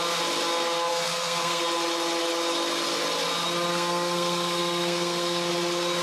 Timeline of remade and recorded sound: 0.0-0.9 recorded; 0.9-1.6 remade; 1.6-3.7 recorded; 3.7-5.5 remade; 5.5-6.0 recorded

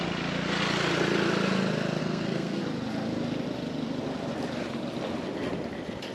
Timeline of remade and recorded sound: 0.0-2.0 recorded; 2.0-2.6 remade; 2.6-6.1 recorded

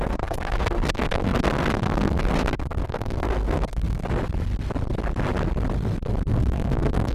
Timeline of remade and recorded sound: 0.0-4.0 remade; 4.0-6.3 recorded; 6.3-7.1 remade

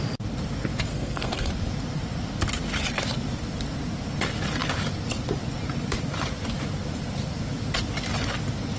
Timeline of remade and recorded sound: 0.0-0.9 recorded; 0.9-1.5 remade; 1.5-8.8 recorded

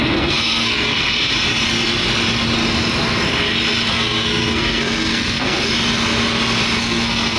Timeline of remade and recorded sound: 0.0-1.3 remade; 1.3-3.9 recorded; 3.9-5.7 remade; 5.7-6.8 recorded; 6.8-7.4 remade